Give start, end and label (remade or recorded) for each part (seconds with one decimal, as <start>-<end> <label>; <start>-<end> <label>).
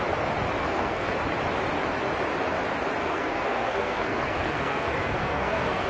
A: 0.0-0.6 recorded; 0.6-1.1 remade; 1.1-3.0 recorded; 3.0-5.9 remade